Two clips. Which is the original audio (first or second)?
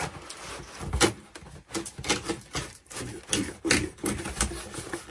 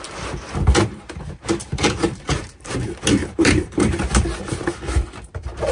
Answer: first